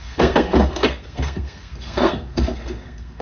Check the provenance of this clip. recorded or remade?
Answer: remade